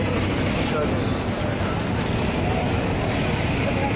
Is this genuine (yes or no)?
yes